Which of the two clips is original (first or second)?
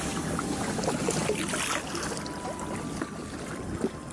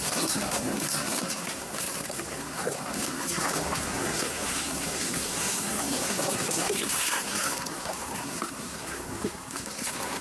first